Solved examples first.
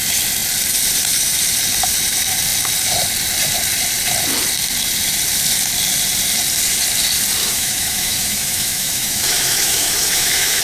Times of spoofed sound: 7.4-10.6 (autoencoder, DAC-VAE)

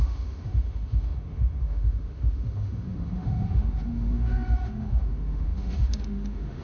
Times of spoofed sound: 0.0-6.6 (autoencoder, DAC-VAE)

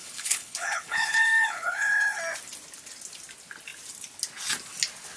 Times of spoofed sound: 0.0-2.2 (codec, HILCodec)

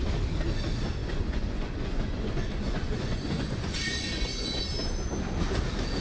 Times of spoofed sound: 1.0-4.6 (vocoder, Vocos)

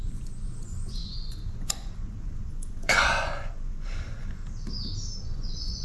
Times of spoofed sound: 0.0-4.4 (vocoder, Vocos); 5.2-5.8

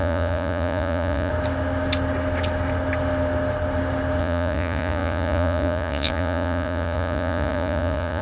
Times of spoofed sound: 0.0-1.3 (vocoder, Vocos); 4.2-8.2

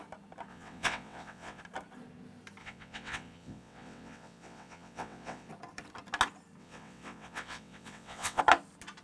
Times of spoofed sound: 0.5-1.6 (vocoder, WaveNeXt); 2.6-5.5; 6.6-8.4

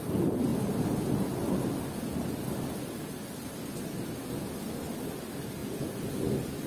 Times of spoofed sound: 5.6-6.3 (vocoder, Vocos)